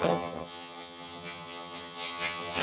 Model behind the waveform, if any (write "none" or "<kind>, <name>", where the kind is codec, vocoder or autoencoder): vocoder, HiFi-GAN